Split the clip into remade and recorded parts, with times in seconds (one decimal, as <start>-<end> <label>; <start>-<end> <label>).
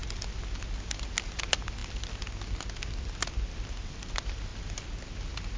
0.0-5.6 recorded